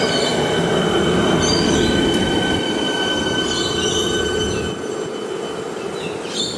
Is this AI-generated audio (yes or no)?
no